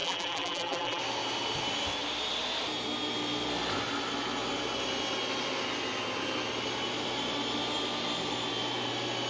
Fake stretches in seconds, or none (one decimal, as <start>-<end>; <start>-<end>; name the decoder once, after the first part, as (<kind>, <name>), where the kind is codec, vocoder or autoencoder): 0.0-1.0 (vocoder, BigVGAN v2)